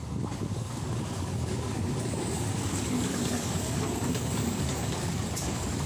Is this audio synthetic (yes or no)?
yes